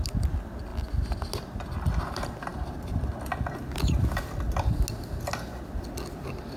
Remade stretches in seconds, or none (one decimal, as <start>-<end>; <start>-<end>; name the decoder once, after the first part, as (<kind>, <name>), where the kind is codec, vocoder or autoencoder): none